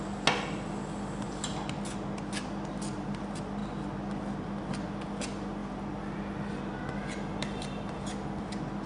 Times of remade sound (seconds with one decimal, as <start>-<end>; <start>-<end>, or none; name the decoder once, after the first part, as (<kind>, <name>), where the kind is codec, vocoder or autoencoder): none